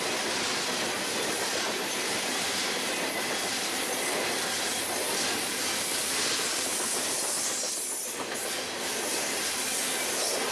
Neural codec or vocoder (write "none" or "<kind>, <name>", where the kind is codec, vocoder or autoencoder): none